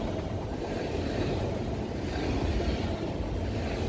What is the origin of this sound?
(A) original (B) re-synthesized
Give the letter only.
A